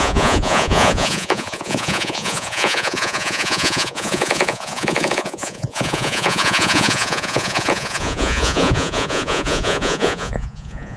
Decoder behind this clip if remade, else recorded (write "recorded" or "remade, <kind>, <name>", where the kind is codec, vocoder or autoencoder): remade, vocoder, Vocos